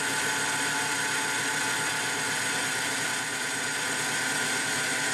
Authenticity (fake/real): real